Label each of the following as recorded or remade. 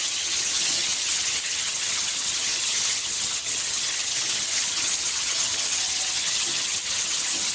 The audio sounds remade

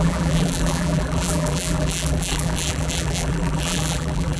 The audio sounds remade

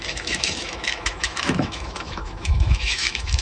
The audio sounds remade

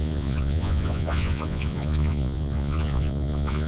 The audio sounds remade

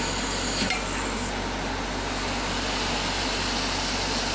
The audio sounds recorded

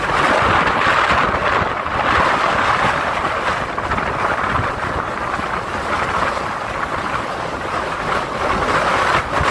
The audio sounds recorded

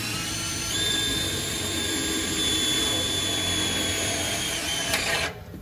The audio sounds remade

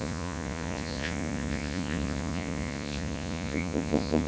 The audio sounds remade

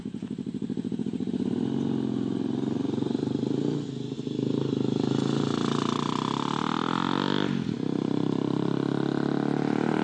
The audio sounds recorded